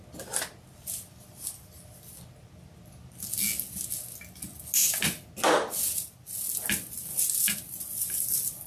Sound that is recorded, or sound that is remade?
recorded